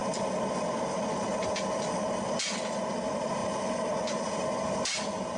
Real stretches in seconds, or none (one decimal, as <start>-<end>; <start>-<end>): 0.0-5.4